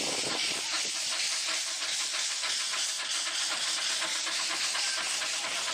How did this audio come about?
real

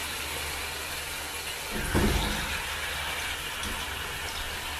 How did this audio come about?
real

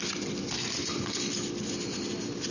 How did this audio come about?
real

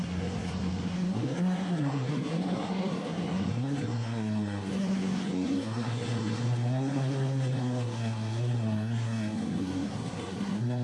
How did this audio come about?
fake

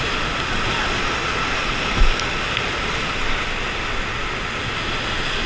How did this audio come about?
real